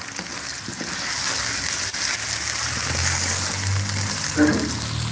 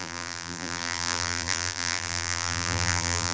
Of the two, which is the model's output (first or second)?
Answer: second